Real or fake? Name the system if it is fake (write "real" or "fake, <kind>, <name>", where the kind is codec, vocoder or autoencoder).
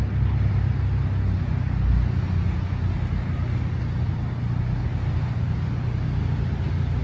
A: real